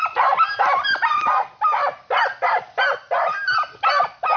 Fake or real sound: real